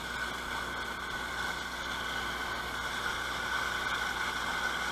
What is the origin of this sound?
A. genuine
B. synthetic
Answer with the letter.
A